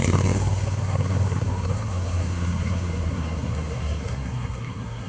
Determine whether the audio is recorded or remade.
remade